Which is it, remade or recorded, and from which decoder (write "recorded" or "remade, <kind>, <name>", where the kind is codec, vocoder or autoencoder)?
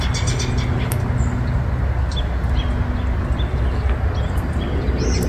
recorded